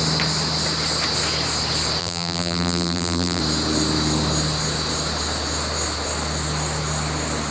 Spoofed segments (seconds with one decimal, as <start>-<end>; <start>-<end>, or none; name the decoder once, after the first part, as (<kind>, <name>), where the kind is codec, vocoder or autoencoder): 2.0-3.4 (vocoder, BigVGAN v2)